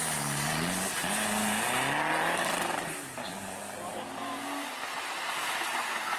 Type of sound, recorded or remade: recorded